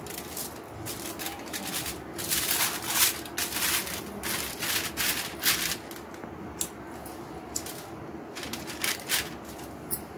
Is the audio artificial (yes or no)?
no